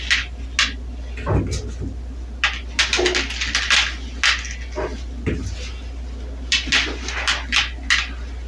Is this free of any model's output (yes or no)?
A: yes